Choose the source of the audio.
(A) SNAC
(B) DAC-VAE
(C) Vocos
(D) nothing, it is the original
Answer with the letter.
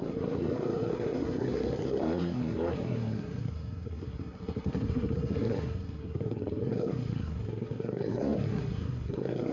A